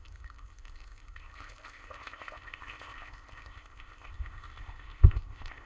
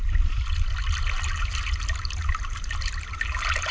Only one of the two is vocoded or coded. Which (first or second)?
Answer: first